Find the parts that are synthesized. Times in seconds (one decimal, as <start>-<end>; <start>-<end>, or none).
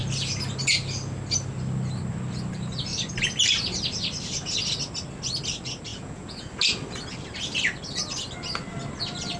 5.9-6.5